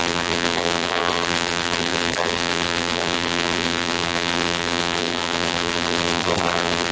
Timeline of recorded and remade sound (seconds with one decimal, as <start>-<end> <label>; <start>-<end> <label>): 0.0-6.9 remade